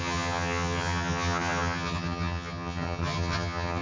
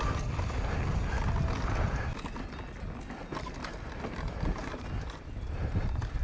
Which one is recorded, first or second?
second